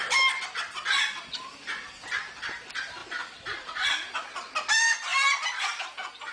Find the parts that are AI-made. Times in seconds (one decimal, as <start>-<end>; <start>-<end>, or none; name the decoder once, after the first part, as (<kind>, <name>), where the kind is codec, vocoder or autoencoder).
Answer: none

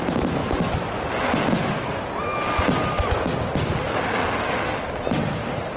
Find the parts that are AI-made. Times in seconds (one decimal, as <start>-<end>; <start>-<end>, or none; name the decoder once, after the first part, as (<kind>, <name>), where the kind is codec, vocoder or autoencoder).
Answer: none